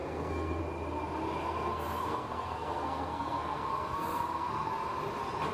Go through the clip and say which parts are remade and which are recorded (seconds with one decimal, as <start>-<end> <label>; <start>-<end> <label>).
0.0-0.6 remade; 0.6-1.4 recorded; 1.4-4.7 remade; 4.7-5.5 recorded